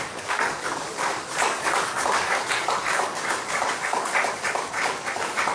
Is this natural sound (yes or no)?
no